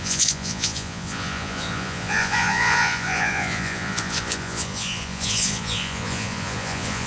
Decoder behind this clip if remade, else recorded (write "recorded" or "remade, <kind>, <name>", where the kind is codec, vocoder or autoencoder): remade, vocoder, Vocos